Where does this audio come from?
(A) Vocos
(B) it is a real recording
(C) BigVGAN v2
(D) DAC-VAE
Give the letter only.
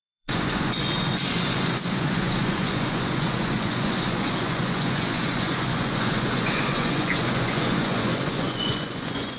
A